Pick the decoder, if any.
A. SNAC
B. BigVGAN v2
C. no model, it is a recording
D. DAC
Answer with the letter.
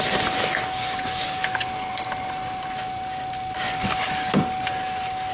C